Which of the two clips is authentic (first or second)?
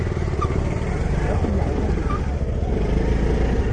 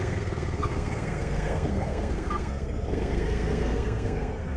first